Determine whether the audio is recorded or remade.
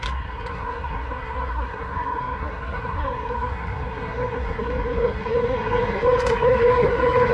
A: remade